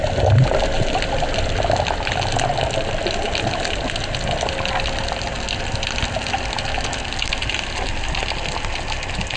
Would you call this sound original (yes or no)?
yes